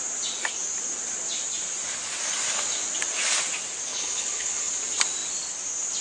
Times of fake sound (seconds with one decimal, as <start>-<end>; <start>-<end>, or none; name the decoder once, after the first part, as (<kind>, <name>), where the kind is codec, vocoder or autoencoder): 3.9-4.7 (codec, HILCodec)